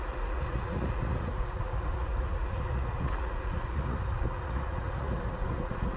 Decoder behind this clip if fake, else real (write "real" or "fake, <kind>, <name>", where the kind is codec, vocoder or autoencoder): fake, vocoder, Vocos